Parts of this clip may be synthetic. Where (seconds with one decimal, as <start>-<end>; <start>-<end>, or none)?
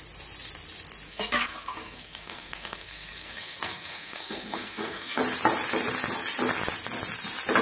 1.1-5.2